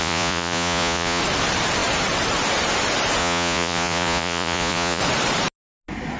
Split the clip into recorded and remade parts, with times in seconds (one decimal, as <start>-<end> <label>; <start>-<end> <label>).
0.0-1.2 remade; 1.2-3.2 recorded; 3.2-5.0 remade; 5.0-6.2 recorded